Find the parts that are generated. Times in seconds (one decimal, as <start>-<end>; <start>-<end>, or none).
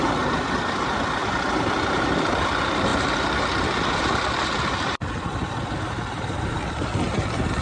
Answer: none